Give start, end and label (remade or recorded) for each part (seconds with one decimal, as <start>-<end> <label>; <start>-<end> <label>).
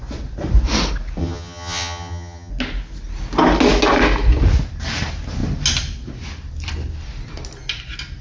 0.0-1.2 recorded; 1.2-2.5 remade; 2.5-8.2 recorded